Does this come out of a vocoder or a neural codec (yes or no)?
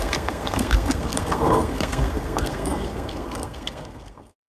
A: yes